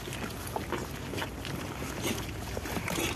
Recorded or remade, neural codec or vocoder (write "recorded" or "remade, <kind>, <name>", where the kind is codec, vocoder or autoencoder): recorded